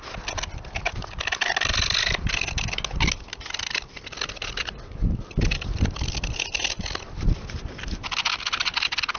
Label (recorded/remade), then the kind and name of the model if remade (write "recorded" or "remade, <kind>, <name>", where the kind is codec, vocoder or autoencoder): recorded